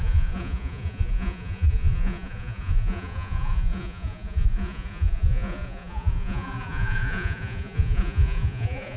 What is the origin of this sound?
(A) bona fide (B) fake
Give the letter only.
B